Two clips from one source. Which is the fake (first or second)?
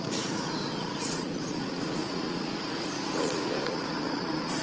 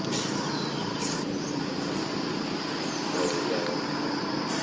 first